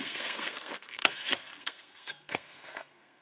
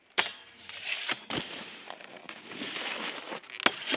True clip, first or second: second